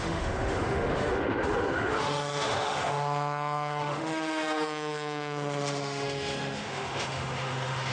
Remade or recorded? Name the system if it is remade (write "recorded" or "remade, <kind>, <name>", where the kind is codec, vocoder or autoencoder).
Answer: remade, autoencoder, DAC-VAE